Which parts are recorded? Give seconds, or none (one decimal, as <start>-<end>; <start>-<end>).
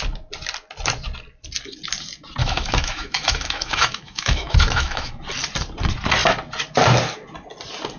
0.0-2.4; 5.1-8.0